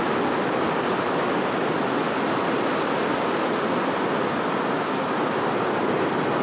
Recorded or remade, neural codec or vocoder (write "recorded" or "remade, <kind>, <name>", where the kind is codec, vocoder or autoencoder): recorded